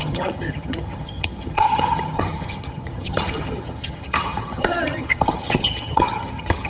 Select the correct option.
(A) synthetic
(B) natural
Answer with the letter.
A